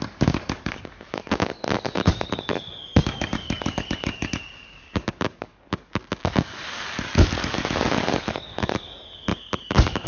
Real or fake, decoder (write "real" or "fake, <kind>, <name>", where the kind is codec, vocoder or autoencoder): fake, codec, DAC